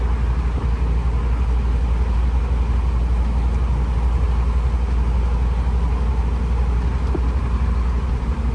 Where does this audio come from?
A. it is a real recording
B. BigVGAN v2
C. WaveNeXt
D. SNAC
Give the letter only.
A